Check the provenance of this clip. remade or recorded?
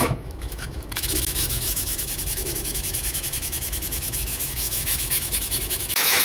remade